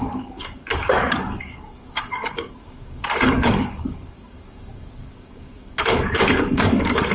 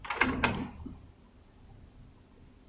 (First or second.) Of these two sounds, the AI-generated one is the first